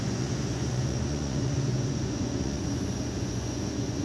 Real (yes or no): no